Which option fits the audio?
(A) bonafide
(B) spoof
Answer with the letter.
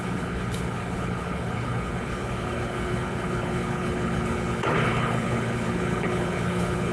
B